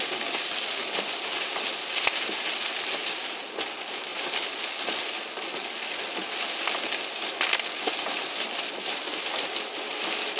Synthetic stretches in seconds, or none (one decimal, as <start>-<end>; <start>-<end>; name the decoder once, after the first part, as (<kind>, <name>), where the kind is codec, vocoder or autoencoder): none